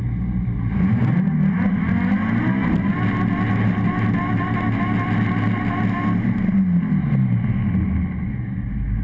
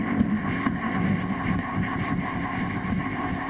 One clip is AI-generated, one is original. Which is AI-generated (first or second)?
second